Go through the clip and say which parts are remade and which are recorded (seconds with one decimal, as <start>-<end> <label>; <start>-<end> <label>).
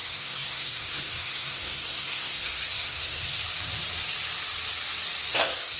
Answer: 0.0-3.4 remade; 3.4-5.3 recorded; 5.3-5.8 remade